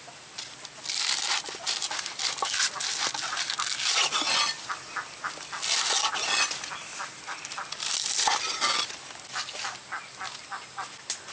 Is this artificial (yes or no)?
no